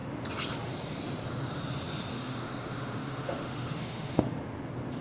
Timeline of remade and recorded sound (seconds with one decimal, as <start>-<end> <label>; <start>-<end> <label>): 0.0-2.1 recorded; 2.1-4.4 remade; 4.4-5.0 recorded